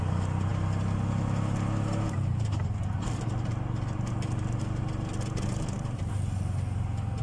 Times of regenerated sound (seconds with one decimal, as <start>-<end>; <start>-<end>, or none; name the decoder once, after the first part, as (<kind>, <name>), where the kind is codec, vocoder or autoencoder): none